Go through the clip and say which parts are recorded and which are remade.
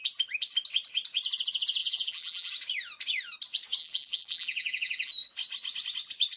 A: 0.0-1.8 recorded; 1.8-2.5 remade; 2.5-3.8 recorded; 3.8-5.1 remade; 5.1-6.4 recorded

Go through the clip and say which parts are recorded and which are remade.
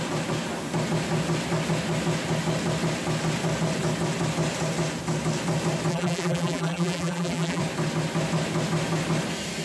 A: 0.0-5.9 recorded; 5.9-7.6 remade; 7.6-9.6 recorded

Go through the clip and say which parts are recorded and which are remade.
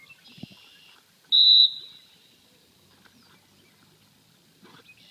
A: 0.0-5.1 recorded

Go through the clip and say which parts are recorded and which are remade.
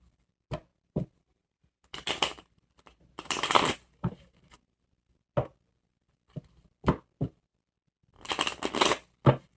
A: 0.0-0.7 recorded; 0.7-4.9 remade; 4.9-9.6 recorded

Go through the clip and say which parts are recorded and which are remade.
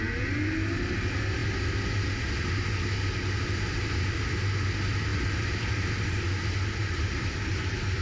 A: 0.0-5.1 recorded; 5.1-8.0 remade